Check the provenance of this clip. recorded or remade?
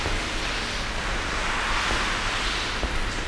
recorded